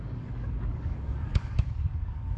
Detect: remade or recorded remade